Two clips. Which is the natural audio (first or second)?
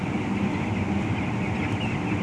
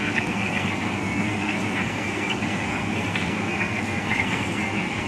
first